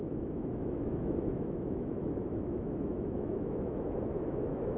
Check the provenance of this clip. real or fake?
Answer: fake